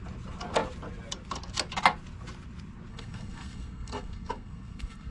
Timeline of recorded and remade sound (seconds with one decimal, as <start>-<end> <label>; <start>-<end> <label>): 0.0-2.9 recorded; 2.9-5.1 remade